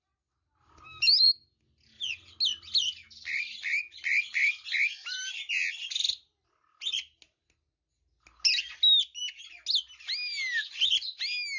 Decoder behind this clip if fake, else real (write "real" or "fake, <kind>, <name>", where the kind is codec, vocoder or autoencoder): real